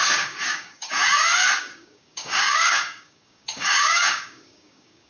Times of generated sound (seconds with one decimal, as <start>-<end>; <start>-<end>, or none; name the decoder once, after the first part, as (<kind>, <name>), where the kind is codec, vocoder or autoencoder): 0.0-1.0 (codec, DAC); 1.6-5.1